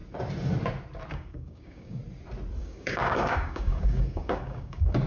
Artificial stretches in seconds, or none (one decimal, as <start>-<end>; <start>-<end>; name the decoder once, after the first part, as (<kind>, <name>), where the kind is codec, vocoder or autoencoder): 1.1-2.0 (codec, DAC); 2.6-5.1